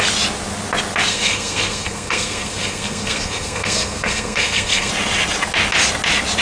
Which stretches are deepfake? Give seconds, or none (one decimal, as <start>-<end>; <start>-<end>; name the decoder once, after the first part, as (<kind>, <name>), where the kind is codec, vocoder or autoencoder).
1.1-4.9 (codec, SNAC)